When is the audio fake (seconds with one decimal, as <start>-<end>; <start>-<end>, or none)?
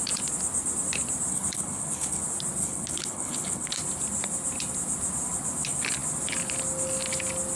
1.3-2.2; 2.6-3.7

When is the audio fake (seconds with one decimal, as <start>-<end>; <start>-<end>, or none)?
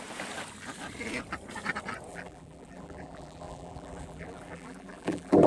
2.1-5.5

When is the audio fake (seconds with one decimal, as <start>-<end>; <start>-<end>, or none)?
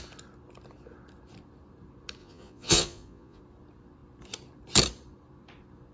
2.2-3.4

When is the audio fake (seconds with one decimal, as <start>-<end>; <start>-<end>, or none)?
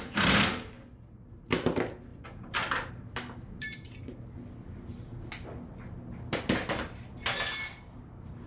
none